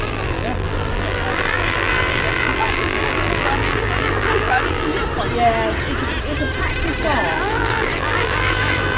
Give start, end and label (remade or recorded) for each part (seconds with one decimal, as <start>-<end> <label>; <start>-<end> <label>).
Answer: 0.0-4.9 remade; 4.9-7.3 recorded; 7.3-9.0 remade